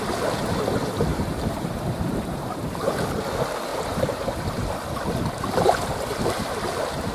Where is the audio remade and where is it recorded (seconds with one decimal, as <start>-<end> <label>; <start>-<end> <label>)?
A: 0.0-1.1 recorded; 1.1-3.1 remade; 3.1-3.7 recorded; 3.7-4.2 remade; 4.2-7.1 recorded